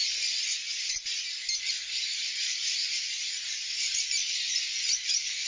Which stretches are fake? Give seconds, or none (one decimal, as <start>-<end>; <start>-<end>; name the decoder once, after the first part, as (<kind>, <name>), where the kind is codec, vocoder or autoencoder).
3.3-4.2 (vocoder, BigVGAN v2); 4.9-5.5